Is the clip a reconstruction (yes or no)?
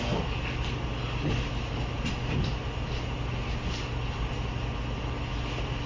no